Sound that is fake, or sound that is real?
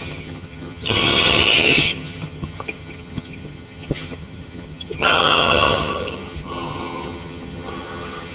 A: fake